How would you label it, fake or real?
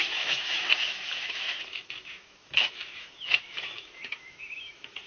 fake